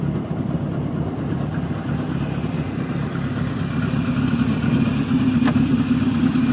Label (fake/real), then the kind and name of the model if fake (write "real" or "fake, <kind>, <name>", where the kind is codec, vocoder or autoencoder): real